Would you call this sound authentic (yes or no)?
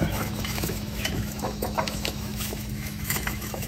no